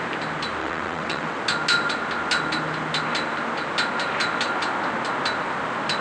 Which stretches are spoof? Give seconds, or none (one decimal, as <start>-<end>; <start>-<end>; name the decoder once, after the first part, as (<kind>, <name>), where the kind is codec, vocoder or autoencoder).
0.6-1.4 (vocoder, WaveNeXt)

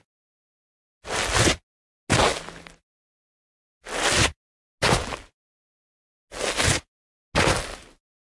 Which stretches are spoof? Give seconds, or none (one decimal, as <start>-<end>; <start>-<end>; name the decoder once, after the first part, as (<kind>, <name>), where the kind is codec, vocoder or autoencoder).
none

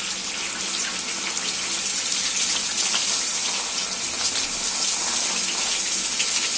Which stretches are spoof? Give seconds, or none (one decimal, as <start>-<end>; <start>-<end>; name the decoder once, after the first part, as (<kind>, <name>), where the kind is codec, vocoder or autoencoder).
none

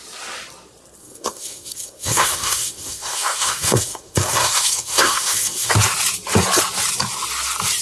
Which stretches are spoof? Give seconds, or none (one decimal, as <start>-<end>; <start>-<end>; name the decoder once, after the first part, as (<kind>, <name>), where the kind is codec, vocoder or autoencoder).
1.0-5.7 (codec, SNAC)